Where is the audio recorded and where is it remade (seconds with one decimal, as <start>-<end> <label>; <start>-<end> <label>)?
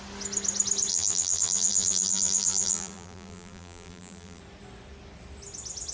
0.0-0.9 recorded; 0.9-4.4 remade; 4.4-5.9 recorded